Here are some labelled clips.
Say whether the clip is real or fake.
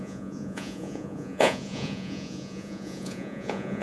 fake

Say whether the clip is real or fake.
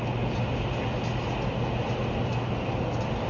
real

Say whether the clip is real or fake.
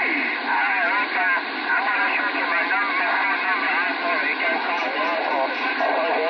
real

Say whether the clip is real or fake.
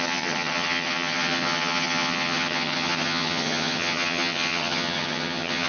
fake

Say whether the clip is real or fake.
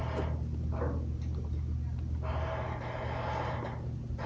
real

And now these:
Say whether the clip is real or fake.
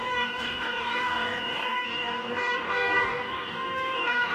fake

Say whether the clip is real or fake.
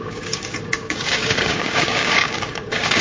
fake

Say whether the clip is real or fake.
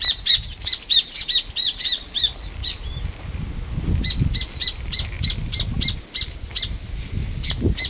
real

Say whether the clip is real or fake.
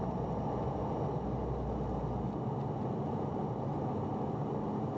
real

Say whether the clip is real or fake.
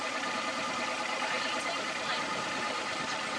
real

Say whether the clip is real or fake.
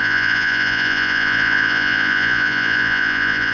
fake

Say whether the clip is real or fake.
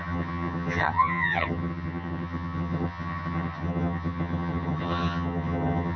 fake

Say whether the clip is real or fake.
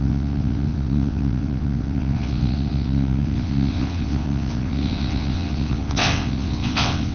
fake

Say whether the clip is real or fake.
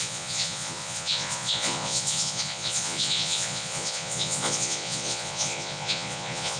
fake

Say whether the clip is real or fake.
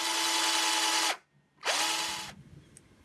real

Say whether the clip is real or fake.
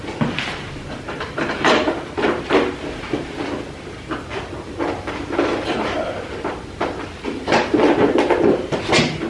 fake